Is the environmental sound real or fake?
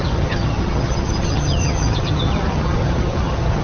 fake